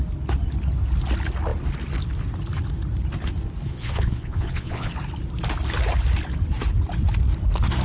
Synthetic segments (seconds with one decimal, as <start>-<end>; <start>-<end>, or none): 3.7-4.9